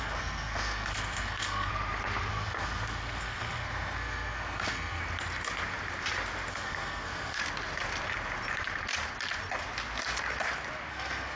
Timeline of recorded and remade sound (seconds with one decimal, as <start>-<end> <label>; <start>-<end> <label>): 0.0-1.7 remade; 1.7-2.3 recorded; 2.3-5.0 remade; 5.0-6.5 recorded; 6.5-7.4 remade; 7.4-10.9 recorded; 10.9-11.4 remade